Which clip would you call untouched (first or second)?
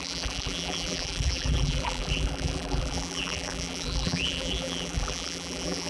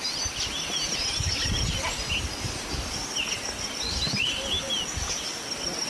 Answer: second